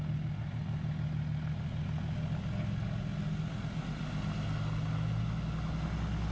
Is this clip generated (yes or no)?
no